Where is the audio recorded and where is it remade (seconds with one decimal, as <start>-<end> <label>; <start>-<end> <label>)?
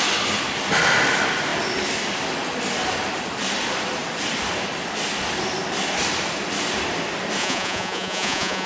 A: 0.0-7.4 recorded; 7.4-8.7 remade